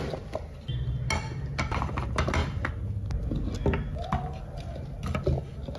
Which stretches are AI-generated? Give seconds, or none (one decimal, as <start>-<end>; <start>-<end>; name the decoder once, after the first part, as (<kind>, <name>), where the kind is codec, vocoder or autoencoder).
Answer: none